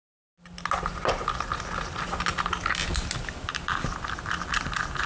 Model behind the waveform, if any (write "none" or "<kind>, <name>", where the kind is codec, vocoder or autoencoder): none